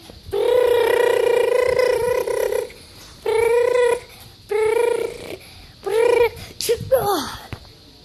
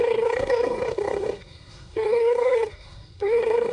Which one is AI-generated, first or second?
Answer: second